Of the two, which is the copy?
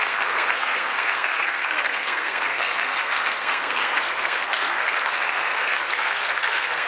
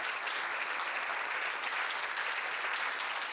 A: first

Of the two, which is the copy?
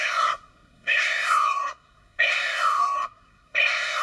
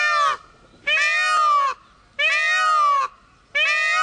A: first